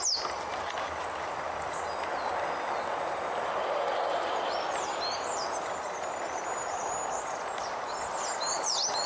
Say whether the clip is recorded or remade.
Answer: recorded